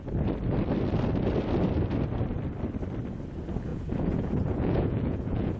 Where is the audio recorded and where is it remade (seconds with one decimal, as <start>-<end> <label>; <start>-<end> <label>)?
0.0-3.7 recorded; 3.7-5.6 remade